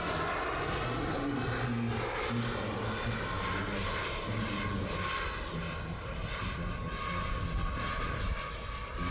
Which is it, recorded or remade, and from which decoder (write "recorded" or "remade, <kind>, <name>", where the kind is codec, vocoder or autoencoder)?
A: recorded